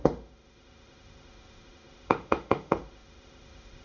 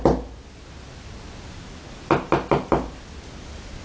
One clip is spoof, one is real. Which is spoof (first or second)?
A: first